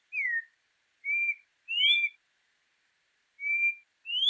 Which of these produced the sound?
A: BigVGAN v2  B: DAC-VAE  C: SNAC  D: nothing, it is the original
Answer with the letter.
D